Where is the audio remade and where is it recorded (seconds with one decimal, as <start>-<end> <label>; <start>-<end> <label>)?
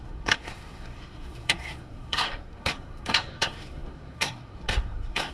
0.0-5.3 remade